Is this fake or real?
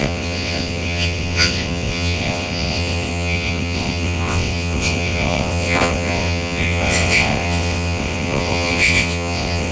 fake